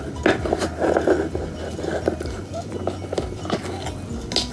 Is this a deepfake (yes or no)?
no